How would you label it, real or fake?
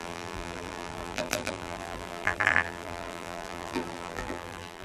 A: fake